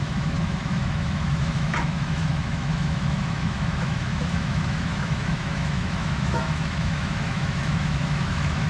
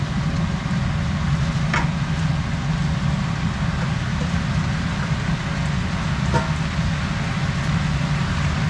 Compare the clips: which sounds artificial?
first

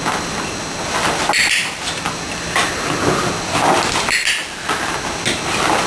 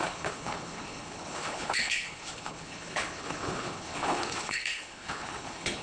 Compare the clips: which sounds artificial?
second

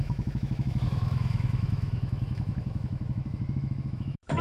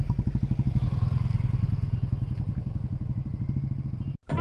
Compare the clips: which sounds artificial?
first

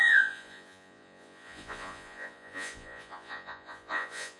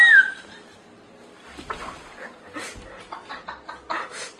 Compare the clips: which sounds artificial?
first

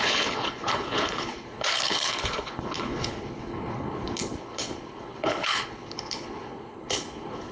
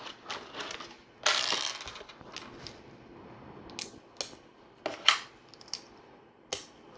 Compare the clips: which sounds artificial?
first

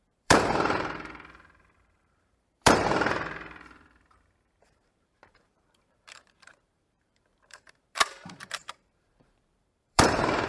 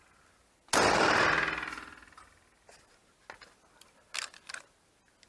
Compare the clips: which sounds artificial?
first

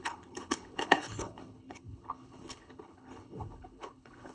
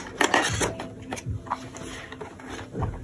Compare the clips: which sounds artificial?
first